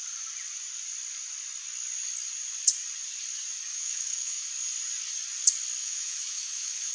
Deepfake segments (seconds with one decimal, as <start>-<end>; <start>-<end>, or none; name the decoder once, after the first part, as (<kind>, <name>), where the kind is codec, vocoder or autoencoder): 3.7-4.5 (autoencoder, DAC-VAE); 5.8-6.9